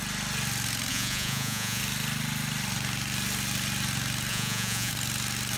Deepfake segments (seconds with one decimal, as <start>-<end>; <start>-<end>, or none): 0.9-1.8; 4.3-4.9